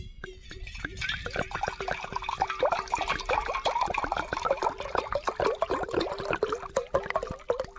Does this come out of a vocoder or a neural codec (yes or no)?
no